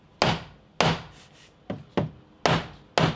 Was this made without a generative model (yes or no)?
yes